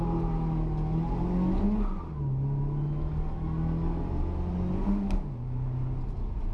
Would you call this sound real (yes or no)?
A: yes